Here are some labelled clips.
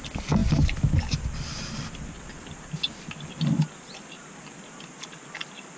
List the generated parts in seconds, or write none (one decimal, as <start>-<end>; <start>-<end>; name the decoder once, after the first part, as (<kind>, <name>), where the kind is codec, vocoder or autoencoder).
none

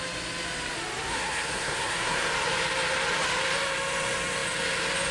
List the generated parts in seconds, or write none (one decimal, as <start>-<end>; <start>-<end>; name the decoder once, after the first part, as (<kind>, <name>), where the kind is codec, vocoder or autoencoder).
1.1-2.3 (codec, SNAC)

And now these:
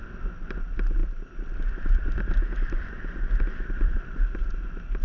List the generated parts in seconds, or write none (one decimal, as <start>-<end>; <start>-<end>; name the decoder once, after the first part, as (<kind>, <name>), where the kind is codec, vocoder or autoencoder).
1.0-4.0 (vocoder, BigVGAN v2)

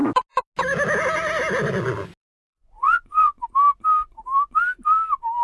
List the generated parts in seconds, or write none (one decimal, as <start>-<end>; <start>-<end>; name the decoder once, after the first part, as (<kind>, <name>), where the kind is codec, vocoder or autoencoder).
2.2-3.4 (vocoder, Vocos)

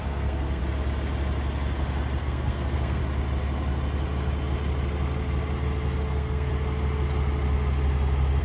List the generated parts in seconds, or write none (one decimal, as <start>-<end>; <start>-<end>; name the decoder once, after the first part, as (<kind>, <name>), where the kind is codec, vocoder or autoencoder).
0.0-0.6 (codec, SNAC); 2.2-3.0; 6.1-6.5

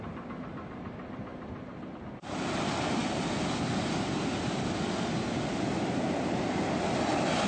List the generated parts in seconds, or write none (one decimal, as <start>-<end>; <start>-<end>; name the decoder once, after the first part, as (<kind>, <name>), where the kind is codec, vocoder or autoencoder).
none

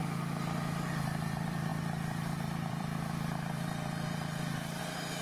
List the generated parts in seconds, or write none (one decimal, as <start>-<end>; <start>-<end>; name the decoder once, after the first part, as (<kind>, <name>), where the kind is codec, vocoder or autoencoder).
0.9-5.2 (vocoder, BigVGAN v2)